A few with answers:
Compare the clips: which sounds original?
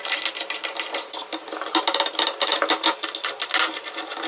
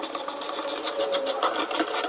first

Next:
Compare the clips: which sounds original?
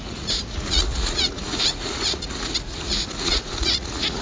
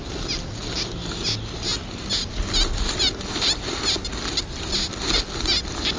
second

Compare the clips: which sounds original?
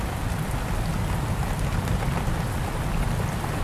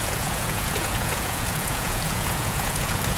first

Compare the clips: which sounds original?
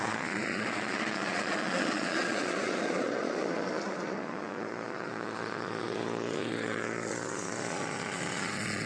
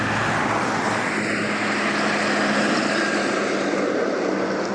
second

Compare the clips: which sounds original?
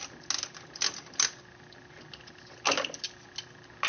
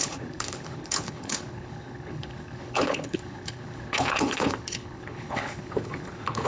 first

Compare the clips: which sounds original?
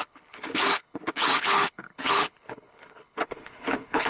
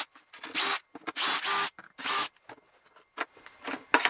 second